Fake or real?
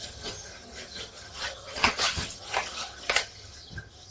fake